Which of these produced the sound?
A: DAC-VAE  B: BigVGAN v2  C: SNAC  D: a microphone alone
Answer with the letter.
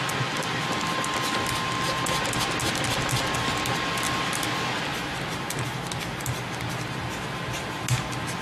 D